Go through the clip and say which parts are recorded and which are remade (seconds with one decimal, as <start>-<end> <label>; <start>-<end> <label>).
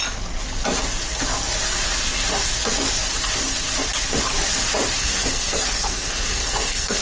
0.0-5.0 recorded; 5.0-7.0 remade